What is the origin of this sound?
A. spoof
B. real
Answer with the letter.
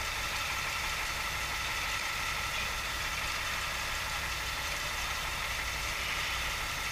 A